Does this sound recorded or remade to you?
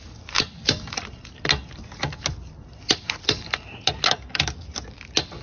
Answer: recorded